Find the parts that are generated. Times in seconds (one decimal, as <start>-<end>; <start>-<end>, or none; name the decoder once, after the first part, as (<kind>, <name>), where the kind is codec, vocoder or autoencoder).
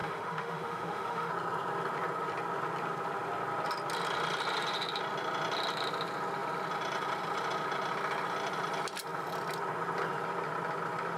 0.0-1.3 (autoencoder, DAC-VAE)